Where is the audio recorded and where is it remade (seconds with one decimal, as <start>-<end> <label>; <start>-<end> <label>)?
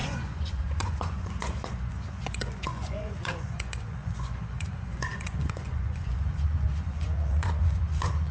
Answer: 0.0-8.3 remade